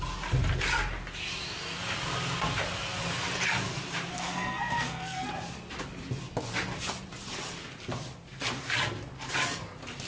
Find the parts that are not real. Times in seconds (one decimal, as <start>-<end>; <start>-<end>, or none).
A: 4.1-5.3